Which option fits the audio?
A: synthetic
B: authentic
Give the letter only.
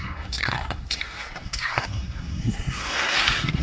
A